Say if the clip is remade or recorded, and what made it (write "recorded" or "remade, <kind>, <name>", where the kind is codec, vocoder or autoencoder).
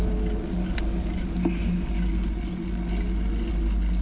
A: recorded